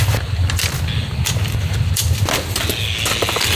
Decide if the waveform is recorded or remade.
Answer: recorded